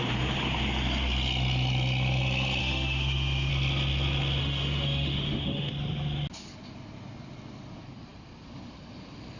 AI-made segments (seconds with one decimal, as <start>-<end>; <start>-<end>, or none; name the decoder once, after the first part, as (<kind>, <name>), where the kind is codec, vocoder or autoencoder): 2.6-3.5 (autoencoder, DAC-VAE); 4.4-5.7